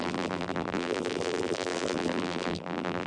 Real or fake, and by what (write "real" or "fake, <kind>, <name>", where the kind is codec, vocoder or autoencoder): fake, vocoder, BigVGAN v2